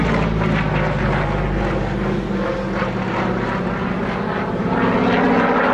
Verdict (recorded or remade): recorded